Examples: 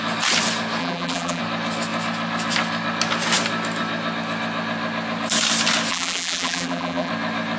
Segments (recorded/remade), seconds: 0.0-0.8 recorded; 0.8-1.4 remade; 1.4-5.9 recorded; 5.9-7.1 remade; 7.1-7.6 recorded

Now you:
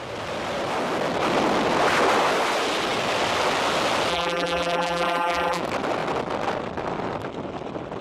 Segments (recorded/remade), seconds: 0.0-4.1 recorded; 4.1-5.6 remade; 5.6-8.0 recorded

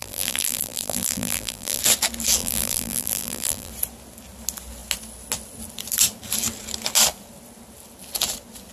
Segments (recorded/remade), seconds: 0.0-1.8 remade; 1.8-2.4 recorded; 2.4-3.7 remade; 3.7-8.7 recorded

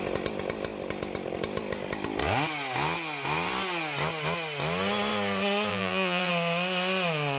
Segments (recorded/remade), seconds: 0.0-5.7 recorded; 5.7-6.3 remade; 6.3-7.4 recorded